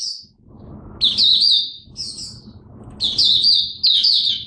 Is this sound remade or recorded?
recorded